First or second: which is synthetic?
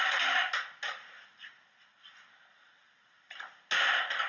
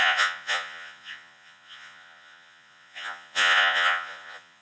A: second